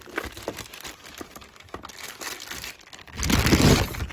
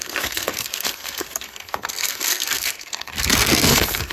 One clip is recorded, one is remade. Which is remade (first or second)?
second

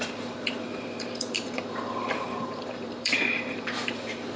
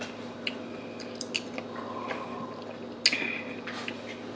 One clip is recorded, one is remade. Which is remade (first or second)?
first